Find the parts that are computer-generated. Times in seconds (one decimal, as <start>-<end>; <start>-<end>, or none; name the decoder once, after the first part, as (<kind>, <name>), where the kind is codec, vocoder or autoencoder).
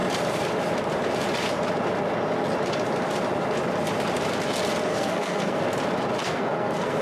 4.9-5.6 (codec, SNAC); 6.2-7.0